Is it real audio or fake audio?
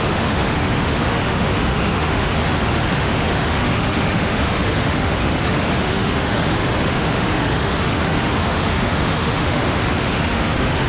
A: fake